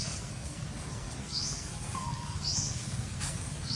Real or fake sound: fake